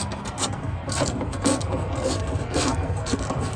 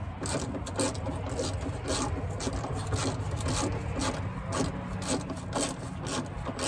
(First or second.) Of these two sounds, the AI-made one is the first